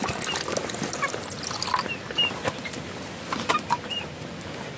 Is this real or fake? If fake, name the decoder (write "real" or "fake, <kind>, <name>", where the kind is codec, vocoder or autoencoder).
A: real